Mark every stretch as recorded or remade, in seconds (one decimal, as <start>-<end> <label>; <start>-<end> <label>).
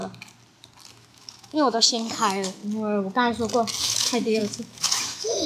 0.0-0.9 recorded; 0.9-2.6 remade; 2.6-3.8 recorded; 3.8-5.5 remade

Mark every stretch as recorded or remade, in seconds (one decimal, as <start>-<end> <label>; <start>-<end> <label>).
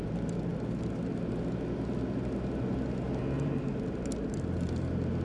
0.0-5.2 recorded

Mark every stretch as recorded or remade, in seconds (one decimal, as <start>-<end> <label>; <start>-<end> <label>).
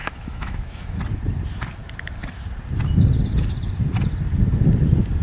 0.0-1.0 remade; 1.0-5.2 recorded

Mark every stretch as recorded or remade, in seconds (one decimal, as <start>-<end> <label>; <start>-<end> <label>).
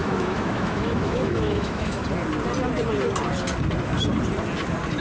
0.0-2.0 remade; 2.0-5.0 recorded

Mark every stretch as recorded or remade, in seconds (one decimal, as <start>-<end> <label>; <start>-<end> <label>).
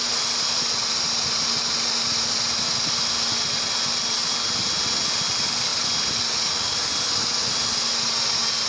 0.0-8.7 recorded